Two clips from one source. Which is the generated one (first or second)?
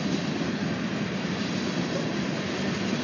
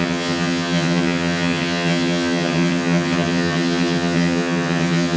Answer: second